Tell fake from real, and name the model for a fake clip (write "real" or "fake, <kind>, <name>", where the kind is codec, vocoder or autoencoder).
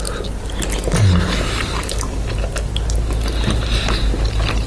real